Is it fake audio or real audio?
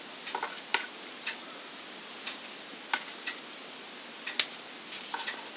real